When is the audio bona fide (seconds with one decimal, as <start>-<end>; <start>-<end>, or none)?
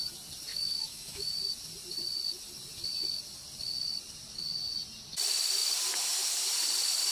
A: 0.0-0.5; 1.3-7.1